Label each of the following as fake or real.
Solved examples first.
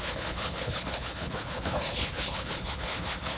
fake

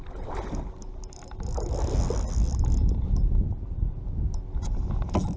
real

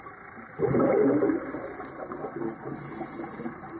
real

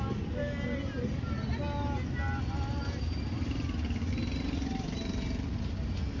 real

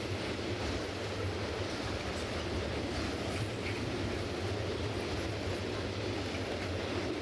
real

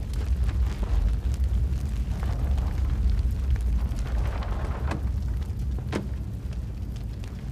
real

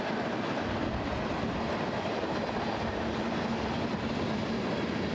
real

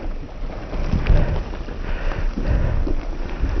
real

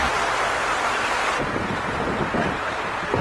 fake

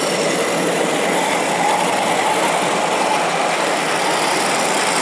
real